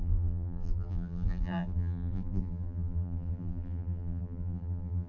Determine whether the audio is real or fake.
fake